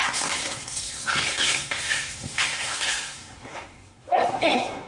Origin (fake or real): fake